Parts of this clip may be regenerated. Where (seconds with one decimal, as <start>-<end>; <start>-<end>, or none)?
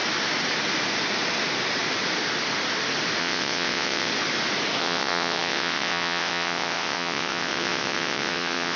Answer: 3.2-4.1; 4.8-8.8